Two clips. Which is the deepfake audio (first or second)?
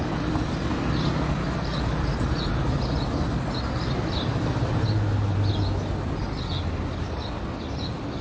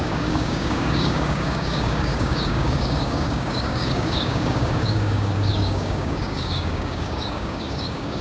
second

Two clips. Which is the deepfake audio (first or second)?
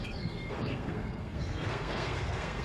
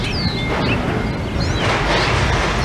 first